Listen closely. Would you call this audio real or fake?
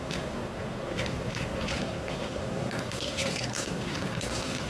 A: fake